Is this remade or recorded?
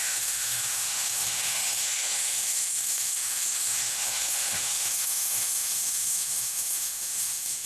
remade